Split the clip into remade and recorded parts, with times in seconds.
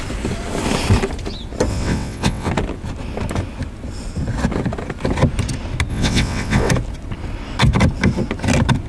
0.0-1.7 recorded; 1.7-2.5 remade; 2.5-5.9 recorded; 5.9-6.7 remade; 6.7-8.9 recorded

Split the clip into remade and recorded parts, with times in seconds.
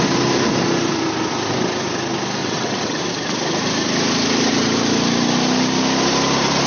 0.0-2.4 recorded; 2.4-3.0 remade; 3.0-6.7 recorded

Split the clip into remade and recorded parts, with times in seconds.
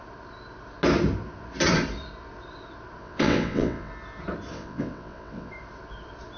0.0-3.0 recorded; 3.0-3.9 remade; 3.9-4.5 recorded; 4.5-5.5 remade; 5.5-6.4 recorded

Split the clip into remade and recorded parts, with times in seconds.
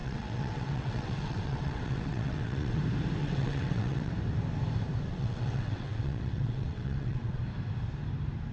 0.0-2.8 remade; 2.8-3.2 recorded; 3.2-4.1 remade; 4.1-5.1 recorded; 5.1-7.4 remade; 7.4-8.5 recorded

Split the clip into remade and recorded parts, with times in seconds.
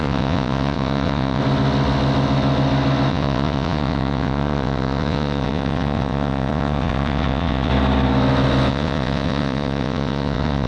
0.0-1.4 remade; 1.4-3.1 recorded; 3.1-7.7 remade; 7.7-8.7 recorded; 8.7-10.7 remade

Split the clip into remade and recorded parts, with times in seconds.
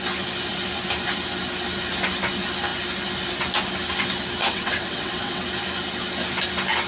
0.0-4.4 recorded; 4.4-5.4 remade; 5.4-6.9 recorded